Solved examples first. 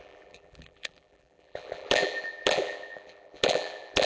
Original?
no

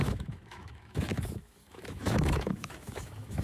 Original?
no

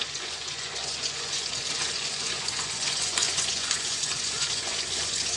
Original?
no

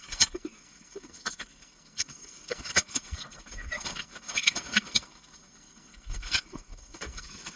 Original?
no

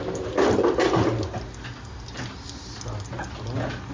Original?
yes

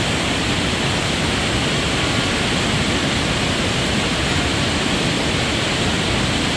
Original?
yes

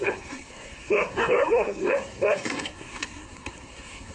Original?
no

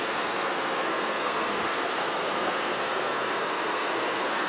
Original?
no